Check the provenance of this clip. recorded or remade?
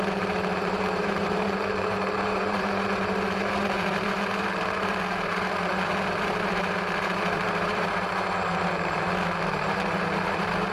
remade